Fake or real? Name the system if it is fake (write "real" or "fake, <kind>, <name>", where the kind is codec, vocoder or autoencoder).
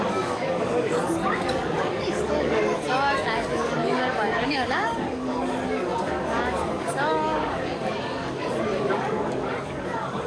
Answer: fake, codec, DAC